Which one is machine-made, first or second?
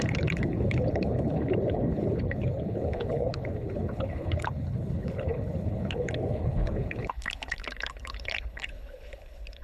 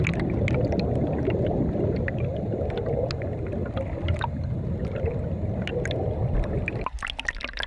first